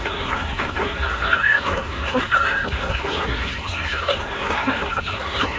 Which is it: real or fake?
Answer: fake